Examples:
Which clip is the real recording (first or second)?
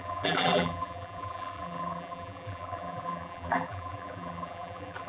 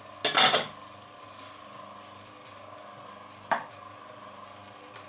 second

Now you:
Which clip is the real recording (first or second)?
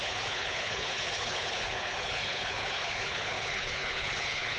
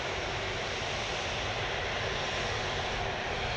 second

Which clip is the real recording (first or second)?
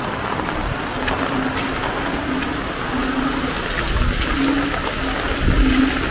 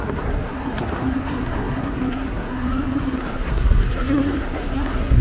first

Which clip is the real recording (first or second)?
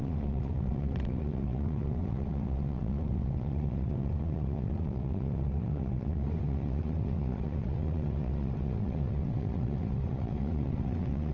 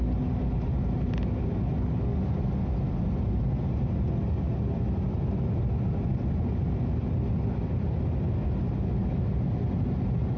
second